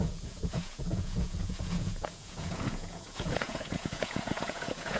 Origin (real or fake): fake